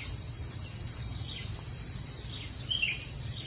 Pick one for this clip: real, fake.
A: real